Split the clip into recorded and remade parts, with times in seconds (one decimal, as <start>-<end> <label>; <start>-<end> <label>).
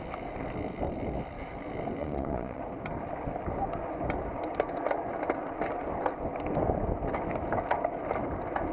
0.0-2.0 recorded; 2.0-2.6 remade; 2.6-8.7 recorded